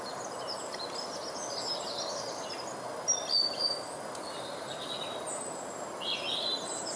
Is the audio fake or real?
real